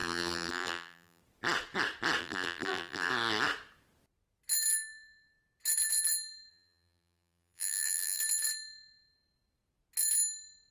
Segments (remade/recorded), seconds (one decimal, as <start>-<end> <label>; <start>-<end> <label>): 0.0-1.2 remade; 1.2-2.2 recorded; 2.2-3.1 remade; 3.1-6.5 recorded; 6.5-8.2 remade; 8.2-10.7 recorded